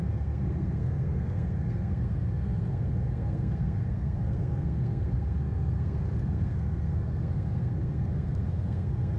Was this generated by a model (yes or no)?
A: yes